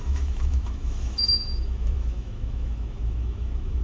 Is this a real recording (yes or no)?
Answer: no